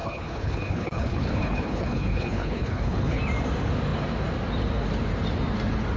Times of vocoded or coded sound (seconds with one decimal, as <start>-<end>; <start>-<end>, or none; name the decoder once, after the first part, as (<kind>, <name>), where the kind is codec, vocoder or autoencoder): 0.0-3.2 (codec, HILCodec)